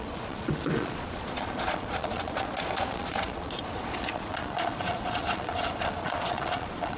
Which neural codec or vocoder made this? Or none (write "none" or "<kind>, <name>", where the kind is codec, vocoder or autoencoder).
vocoder, Vocos